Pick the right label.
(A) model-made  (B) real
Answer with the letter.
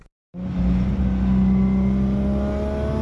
B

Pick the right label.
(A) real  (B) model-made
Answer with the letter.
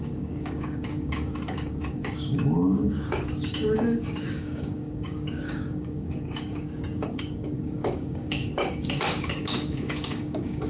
B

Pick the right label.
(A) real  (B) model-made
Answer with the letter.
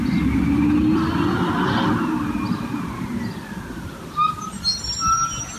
A